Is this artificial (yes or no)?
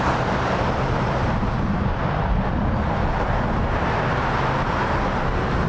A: yes